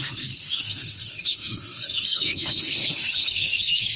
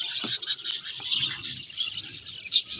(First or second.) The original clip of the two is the second